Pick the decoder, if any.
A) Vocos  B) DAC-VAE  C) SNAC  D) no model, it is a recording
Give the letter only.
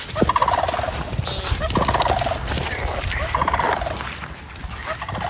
D